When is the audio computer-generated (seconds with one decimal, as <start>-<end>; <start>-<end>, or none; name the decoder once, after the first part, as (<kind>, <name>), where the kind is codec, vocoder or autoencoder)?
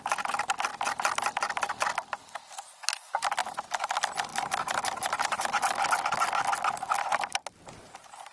3.4-3.9 (vocoder, BigVGAN v2); 4.3-5.6